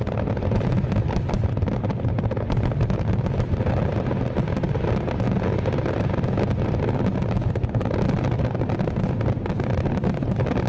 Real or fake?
real